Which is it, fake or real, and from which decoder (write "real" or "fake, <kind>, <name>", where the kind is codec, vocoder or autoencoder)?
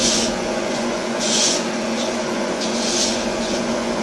fake, vocoder, Vocos